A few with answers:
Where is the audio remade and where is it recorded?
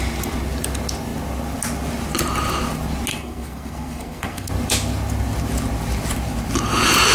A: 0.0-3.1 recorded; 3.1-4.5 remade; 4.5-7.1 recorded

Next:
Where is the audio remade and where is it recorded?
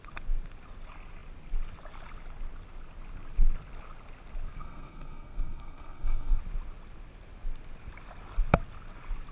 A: 0.0-4.6 recorded; 4.6-6.4 remade; 6.4-9.3 recorded